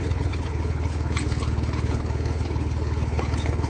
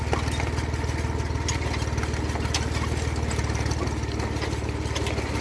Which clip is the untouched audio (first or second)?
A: second